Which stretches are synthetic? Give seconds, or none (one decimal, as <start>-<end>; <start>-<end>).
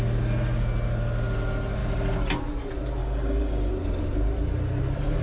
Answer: 3.0-3.7